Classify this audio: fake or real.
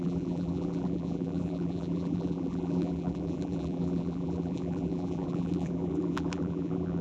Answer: fake